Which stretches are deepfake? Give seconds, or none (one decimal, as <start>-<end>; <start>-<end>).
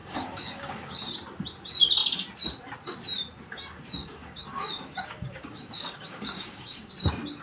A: 0.0-1.1; 4.0-6.9